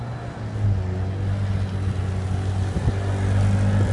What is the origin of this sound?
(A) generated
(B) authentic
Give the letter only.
B